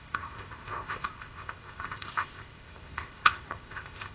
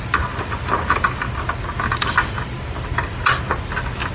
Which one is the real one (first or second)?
second